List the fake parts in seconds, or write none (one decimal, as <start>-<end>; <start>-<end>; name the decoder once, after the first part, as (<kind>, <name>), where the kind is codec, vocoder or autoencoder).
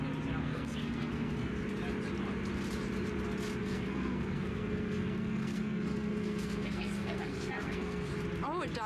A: 0.4-1.5 (codec, SNAC); 3.6-8.1